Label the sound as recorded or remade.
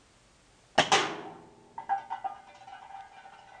recorded